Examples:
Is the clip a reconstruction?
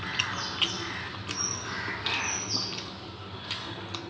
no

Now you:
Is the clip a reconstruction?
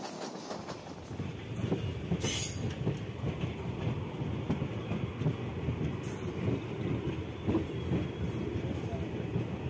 no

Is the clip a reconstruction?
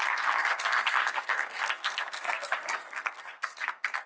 yes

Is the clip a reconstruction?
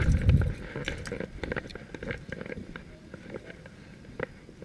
no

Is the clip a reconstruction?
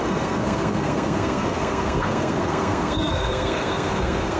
yes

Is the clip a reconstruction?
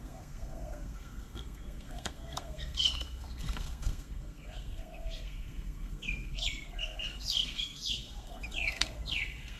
yes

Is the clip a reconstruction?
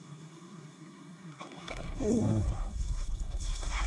yes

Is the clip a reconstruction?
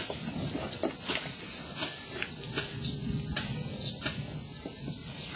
no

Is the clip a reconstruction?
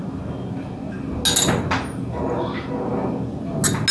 no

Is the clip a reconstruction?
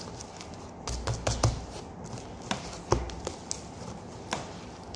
no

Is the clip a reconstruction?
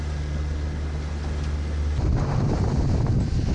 no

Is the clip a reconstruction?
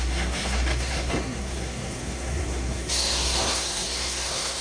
yes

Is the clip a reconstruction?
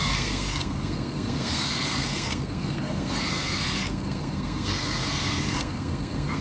yes